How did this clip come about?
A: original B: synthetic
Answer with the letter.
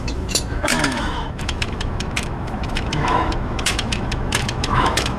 B